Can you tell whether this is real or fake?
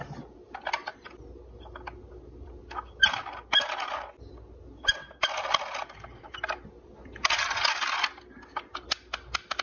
real